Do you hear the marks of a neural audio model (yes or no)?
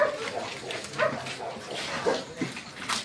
no